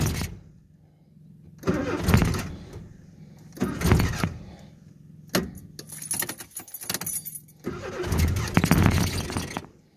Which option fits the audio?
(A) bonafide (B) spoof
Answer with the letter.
A